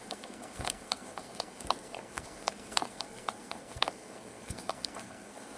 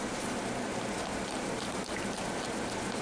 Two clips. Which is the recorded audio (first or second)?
second